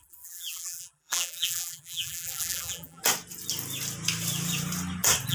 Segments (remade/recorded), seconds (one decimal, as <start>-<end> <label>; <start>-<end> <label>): 0.0-3.0 remade; 3.0-5.3 recorded